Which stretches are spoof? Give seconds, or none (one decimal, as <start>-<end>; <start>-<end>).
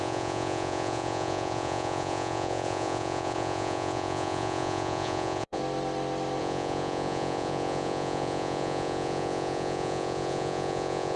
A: 0.0-5.6; 6.4-11.2